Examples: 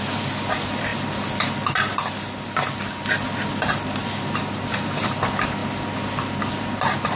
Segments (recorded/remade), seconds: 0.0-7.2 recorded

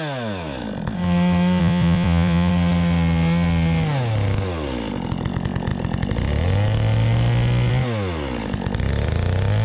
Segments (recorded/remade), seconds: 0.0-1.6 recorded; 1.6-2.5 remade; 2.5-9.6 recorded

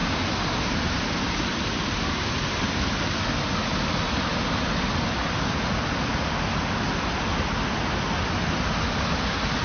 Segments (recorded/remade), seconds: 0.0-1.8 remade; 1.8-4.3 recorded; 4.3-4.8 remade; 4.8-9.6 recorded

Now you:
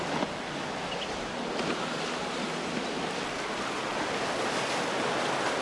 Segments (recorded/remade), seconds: 0.0-5.6 recorded

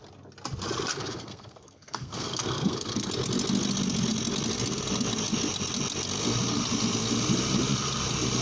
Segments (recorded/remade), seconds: 0.0-0.9 recorded; 0.9-3.1 remade; 3.1-8.4 recorded

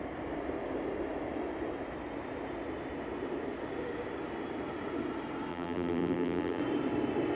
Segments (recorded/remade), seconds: 0.0-5.5 recorded; 5.5-6.6 remade; 6.6-7.4 recorded